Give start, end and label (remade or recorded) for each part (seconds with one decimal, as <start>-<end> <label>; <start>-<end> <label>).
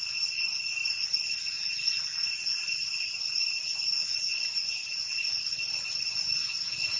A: 0.0-7.0 recorded